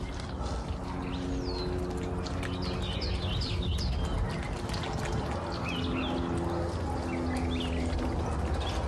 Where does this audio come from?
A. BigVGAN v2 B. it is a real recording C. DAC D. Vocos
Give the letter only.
B